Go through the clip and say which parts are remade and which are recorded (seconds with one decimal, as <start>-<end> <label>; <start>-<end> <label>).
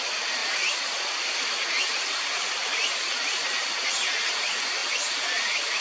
0.0-0.4 recorded; 0.4-3.9 remade; 3.9-5.8 recorded